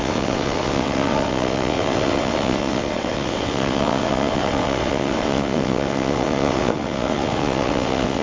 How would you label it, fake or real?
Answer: fake